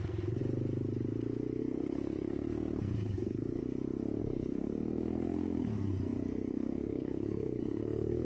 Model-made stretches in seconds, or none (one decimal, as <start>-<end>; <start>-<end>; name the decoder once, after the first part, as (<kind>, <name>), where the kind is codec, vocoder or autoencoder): 0.0-0.4 (codec, SNAC); 1.6-3.6; 4.2-8.2